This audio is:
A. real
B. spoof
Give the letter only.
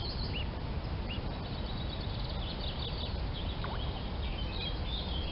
A